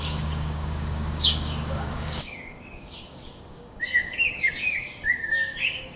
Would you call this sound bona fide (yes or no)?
no